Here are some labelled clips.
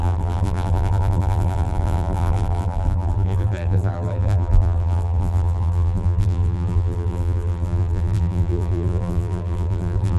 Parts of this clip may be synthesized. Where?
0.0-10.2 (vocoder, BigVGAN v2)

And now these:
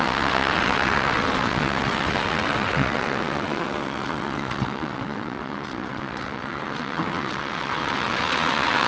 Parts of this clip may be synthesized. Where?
0.0-8.9 (vocoder, WaveNeXt)

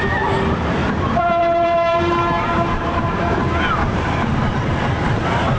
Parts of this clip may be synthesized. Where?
0.8-4.1 (vocoder, BigVGAN v2)

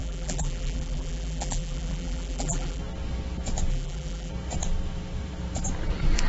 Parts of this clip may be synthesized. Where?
0.0-2.8 (vocoder, BigVGAN v2); 3.7-4.3

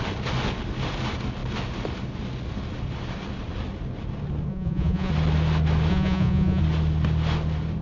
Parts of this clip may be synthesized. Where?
4.5-5.1 (vocoder, Vocos); 5.9-6.6

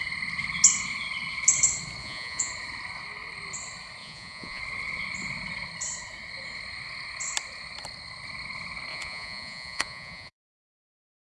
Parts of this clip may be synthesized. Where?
2.0-2.5 (vocoder, Vocos); 4.0-4.6; 8.9-10.4

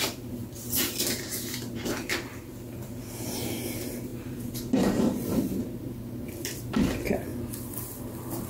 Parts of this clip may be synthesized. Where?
0.0-7.3 (vocoder, BigVGAN v2); 8.0-8.5

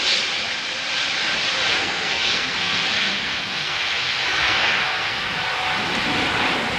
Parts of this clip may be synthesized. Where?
1.7-5.3 (codec, SNAC)